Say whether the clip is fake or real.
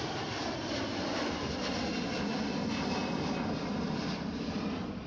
real